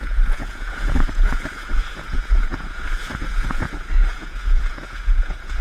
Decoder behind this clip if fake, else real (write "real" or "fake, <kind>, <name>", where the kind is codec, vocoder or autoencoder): fake, vocoder, Vocos